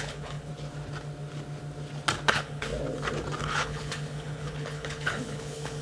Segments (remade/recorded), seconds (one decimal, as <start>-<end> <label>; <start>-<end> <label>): 0.0-0.5 remade; 0.5-2.3 recorded; 2.3-2.7 remade; 2.7-3.4 recorded; 3.4-5.8 remade